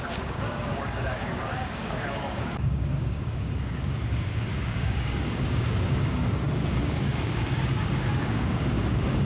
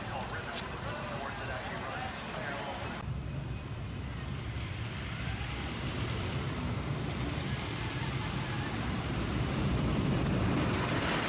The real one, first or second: second